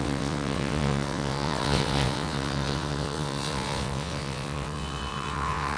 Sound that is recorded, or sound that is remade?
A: remade